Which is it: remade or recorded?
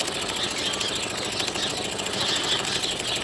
recorded